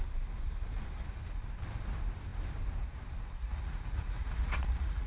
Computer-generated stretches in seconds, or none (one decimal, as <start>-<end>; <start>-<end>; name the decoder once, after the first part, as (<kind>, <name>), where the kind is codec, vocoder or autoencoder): 3.4-5.1 (vocoder, Vocos)

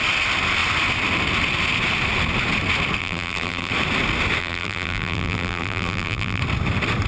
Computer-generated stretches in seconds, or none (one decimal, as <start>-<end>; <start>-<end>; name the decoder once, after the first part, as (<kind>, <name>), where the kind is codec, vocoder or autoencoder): 3.0-3.7 (vocoder, BigVGAN v2); 4.4-6.4

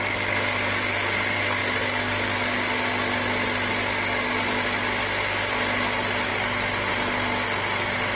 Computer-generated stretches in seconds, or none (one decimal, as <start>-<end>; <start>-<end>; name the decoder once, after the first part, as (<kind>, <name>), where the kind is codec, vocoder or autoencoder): none